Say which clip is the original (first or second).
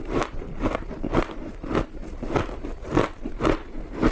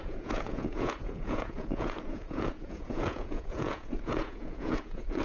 first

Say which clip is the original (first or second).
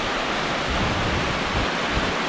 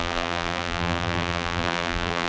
first